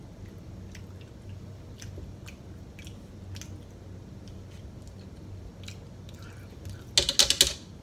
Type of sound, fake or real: real